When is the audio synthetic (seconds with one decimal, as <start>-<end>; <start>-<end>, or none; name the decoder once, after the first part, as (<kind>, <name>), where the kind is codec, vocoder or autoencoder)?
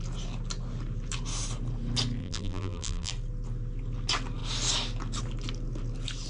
2.2-3.1 (vocoder, BigVGAN v2)